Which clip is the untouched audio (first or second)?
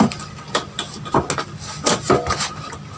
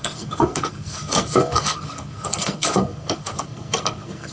first